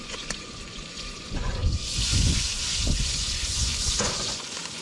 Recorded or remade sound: remade